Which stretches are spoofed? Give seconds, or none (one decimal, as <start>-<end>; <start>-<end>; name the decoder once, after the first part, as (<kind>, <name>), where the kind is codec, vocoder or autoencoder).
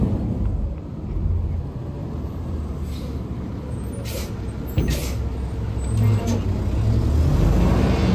2.0-4.3 (vocoder, BigVGAN v2)